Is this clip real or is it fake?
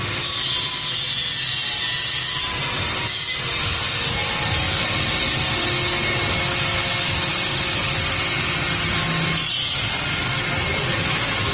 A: real